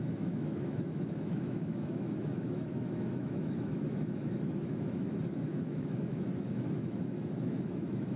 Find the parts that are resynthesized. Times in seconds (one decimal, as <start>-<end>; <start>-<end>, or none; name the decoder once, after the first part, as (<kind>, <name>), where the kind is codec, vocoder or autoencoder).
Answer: 0.0-8.2 (autoencoder, DAC-VAE)